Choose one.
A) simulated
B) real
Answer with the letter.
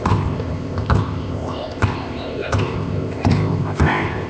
A